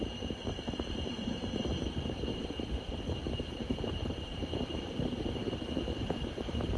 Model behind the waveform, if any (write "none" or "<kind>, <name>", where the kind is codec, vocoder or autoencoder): vocoder, BigVGAN v2